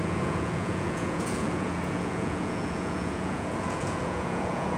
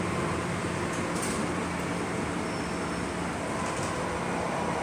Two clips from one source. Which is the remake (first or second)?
first